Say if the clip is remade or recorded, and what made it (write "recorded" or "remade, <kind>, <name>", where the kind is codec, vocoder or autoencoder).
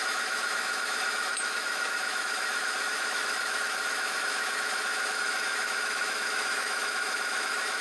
remade, autoencoder, DAC-VAE